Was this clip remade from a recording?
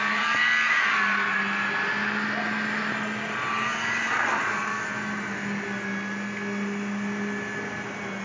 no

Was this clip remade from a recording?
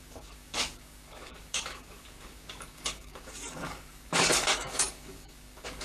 yes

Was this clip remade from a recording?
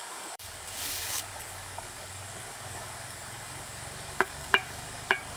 yes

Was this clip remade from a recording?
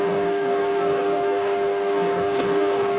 yes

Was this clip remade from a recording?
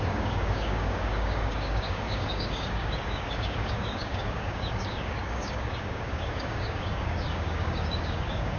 yes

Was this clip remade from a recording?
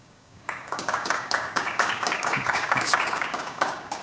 yes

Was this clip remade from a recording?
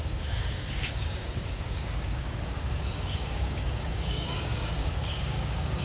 yes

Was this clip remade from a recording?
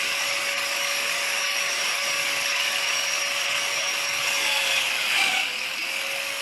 yes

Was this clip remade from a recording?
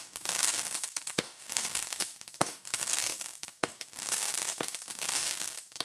yes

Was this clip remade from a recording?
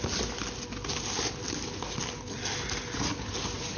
no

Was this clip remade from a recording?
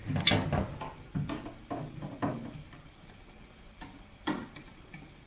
no